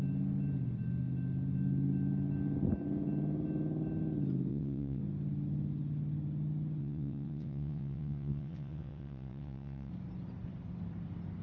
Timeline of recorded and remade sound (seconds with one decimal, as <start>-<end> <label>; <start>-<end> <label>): 0.0-4.5 recorded; 4.5-5.0 remade; 5.0-6.8 recorded; 6.8-9.9 remade; 9.9-11.4 recorded